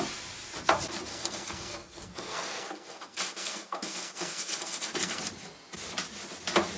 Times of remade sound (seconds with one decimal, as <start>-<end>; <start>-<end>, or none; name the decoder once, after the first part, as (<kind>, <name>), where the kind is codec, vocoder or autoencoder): 1.1-5.2 (codec, SNAC)